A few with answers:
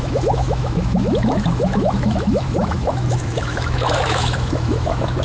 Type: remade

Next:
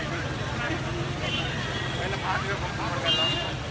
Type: recorded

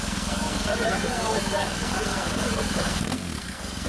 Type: remade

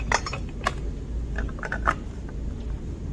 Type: recorded